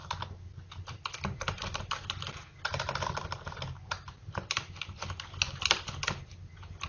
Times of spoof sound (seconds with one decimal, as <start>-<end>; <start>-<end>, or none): none